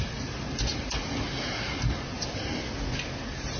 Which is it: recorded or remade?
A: recorded